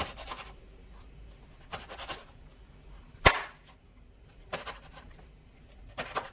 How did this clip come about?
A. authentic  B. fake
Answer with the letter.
A